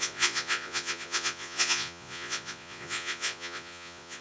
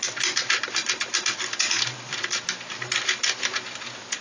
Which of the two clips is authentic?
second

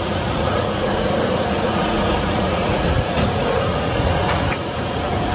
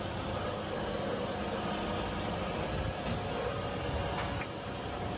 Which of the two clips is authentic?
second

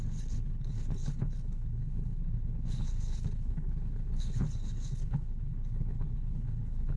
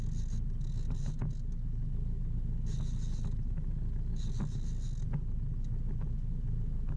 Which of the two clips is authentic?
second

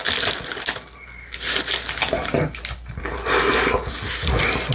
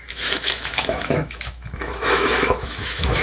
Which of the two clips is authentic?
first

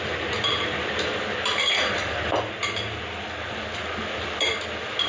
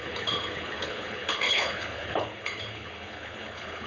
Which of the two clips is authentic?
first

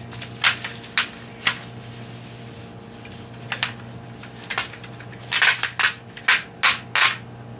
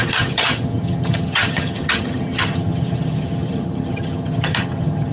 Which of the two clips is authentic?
first